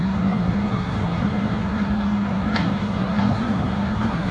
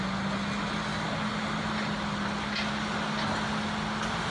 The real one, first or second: second